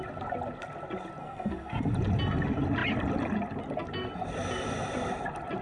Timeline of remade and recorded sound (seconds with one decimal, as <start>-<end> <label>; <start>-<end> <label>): 0.0-1.2 recorded; 1.2-1.9 remade; 1.9-5.6 recorded